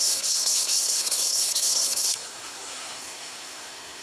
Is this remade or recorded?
remade